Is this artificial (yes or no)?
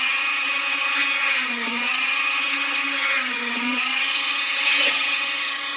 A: yes